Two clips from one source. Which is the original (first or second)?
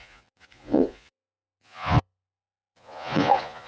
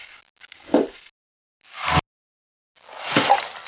second